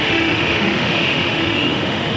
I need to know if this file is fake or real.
fake